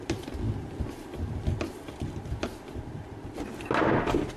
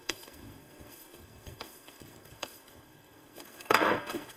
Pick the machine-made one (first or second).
second